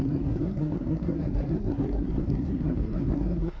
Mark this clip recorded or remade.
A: remade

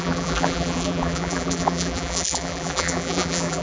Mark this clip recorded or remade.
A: remade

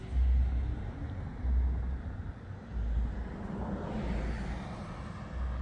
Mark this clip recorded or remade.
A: recorded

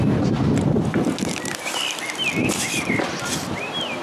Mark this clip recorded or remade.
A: recorded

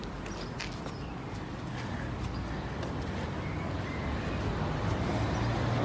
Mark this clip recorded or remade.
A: recorded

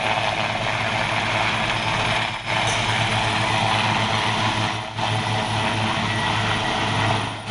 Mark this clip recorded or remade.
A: recorded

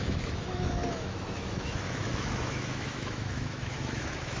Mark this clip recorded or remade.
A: remade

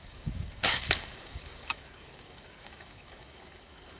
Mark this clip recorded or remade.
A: remade